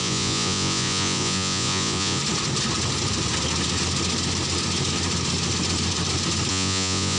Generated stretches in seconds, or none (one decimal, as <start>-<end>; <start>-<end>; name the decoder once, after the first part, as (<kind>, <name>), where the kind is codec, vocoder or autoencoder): 0.0-2.2 (vocoder, Vocos); 6.5-7.2